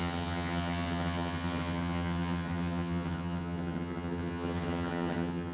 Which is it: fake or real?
fake